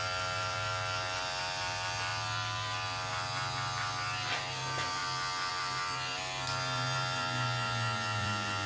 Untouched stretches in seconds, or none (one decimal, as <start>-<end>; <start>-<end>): 5.0-5.5

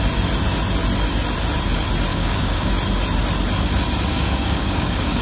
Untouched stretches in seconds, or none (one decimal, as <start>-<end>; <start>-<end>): 0.0-2.1; 2.7-4.1

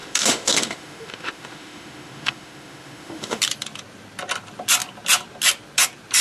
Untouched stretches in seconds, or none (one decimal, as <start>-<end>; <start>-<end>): 3.4-6.2

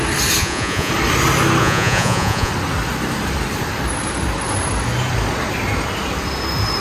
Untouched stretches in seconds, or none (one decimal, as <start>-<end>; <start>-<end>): 0.0-0.4; 0.9-1.6; 2.5-6.8

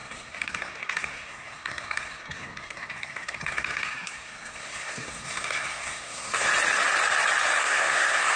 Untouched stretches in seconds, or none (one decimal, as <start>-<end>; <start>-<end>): 6.5-7.6

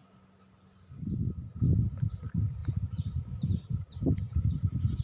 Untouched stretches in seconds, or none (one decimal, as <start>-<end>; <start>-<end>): 0.0-2.6; 4.1-5.0

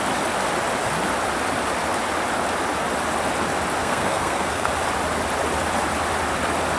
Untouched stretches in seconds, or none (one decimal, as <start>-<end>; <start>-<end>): 0.0-3.8; 4.7-6.8

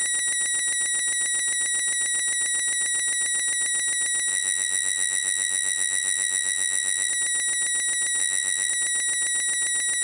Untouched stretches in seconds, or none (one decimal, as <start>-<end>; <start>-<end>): 0.0-4.3; 7.1-8.2; 8.7-10.0